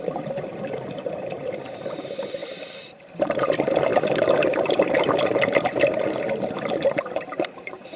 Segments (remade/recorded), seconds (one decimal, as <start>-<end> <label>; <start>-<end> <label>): 0.0-2.4 remade; 2.4-3.2 recorded; 3.2-8.0 remade